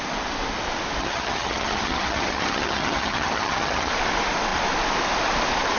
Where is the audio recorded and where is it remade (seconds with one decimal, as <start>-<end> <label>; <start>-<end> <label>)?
0.0-1.0 recorded; 1.0-3.9 remade; 3.9-5.8 recorded